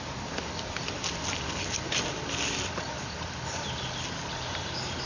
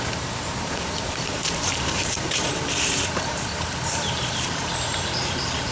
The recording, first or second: first